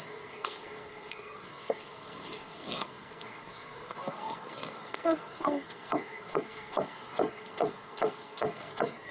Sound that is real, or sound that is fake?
fake